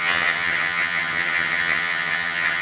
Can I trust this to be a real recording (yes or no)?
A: no